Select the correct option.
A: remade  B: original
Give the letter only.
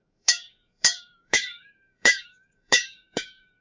A